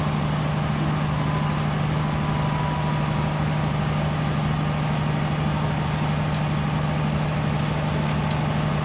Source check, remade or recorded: recorded